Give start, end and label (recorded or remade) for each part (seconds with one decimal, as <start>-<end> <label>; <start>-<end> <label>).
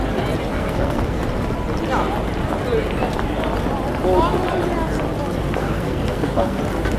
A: 0.0-0.5 recorded; 0.5-1.2 remade; 1.2-5.6 recorded; 5.6-6.6 remade; 6.6-7.0 recorded